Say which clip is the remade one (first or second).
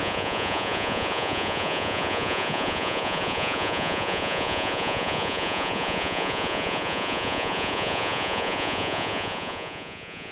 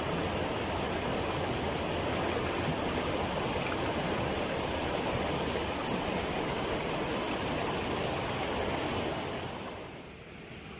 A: first